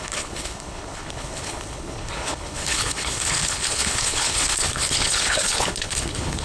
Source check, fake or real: fake